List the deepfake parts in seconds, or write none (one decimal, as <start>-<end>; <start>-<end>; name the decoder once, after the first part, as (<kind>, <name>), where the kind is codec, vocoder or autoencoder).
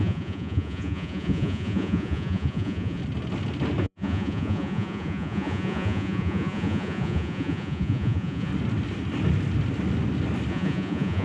0.0-3.0 (vocoder, Vocos); 3.8-8.5; 10.5-11.2